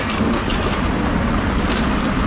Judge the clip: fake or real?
real